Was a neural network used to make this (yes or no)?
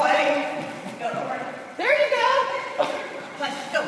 yes